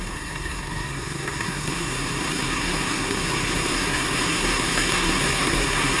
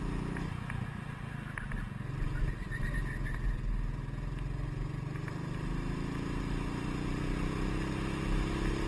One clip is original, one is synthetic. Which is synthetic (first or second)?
first